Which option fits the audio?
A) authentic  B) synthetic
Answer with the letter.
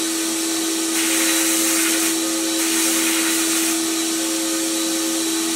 A